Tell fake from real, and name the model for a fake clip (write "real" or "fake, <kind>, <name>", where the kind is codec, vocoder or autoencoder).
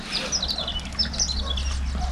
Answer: real